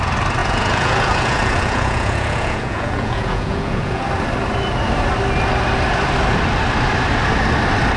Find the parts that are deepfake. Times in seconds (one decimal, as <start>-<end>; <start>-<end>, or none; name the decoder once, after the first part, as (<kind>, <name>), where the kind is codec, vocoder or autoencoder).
0.4-4.0 (vocoder, Vocos)